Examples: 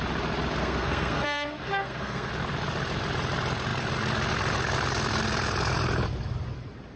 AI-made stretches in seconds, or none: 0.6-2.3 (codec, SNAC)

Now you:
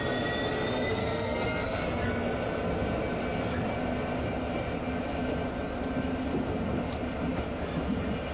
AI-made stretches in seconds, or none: 1.0-1.8 (codec, SNAC)

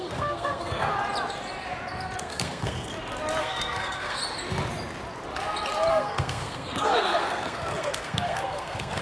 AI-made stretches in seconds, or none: 0.0-0.9 (codec, SNAC); 2.2-2.9; 3.4-4.2; 5.9-9.0

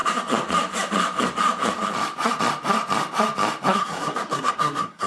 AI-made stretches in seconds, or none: 3.7-5.1 (codec, SNAC)

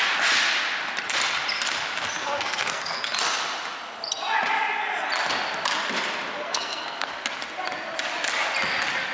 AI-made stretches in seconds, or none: 2.2-3.0 (codec, SNAC); 6.4-7.1

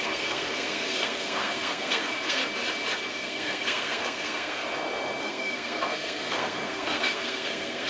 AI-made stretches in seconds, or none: 0.0-2.4 (codec, SNAC); 3.1-4.6; 5.2-7.9

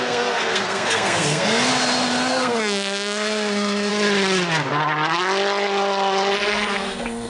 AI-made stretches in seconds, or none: 0.0-1.7 (codec, SNAC); 2.3-3.9; 6.7-7.3